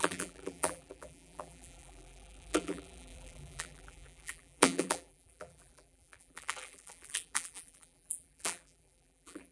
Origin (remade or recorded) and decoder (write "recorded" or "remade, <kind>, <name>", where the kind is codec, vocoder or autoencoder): remade, vocoder, BigVGAN v2